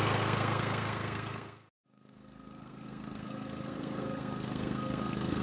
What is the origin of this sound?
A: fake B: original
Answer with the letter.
A